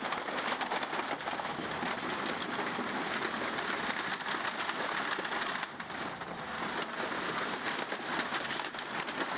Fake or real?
real